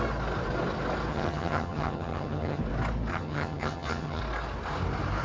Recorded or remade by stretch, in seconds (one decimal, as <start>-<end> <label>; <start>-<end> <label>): 0.0-1.1 recorded; 1.1-2.6 remade; 2.6-3.1 recorded; 3.1-4.2 remade; 4.2-5.2 recorded